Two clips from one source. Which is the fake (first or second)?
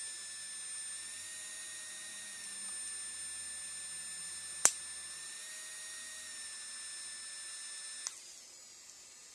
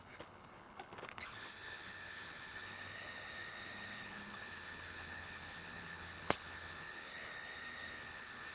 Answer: second